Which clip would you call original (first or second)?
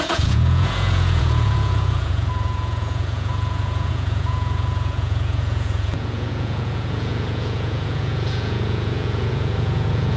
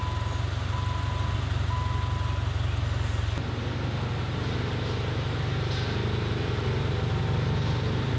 second